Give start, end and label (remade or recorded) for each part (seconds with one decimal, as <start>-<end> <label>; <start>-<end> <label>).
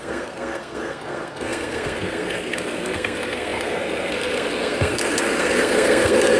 0.0-6.4 remade